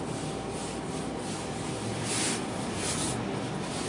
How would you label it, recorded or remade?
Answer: recorded